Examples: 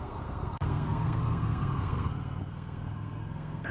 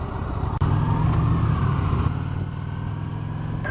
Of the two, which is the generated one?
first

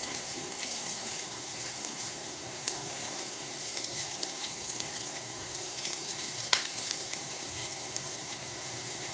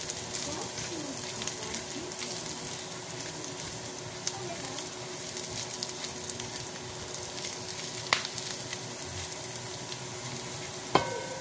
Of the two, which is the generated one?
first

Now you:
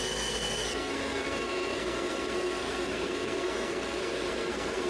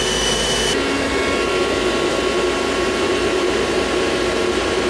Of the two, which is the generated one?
first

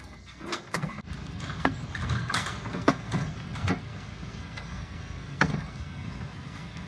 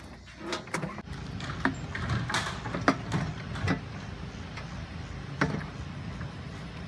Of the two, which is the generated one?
first